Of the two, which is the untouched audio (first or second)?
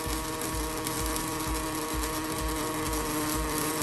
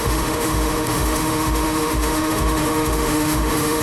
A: first